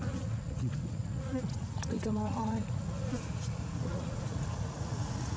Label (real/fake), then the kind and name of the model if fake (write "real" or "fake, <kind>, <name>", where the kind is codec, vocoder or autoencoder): fake, vocoder, Vocos